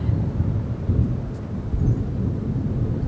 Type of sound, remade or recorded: recorded